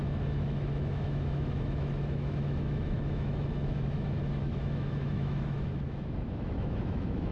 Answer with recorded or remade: remade